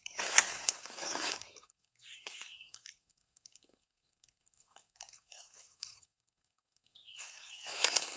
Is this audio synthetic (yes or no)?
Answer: yes